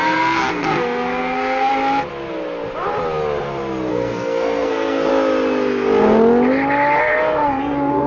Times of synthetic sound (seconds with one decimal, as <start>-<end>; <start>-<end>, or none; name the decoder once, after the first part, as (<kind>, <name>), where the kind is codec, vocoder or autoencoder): 0.0-1.7 (codec, SNAC); 3.9-5.1; 7.0-8.1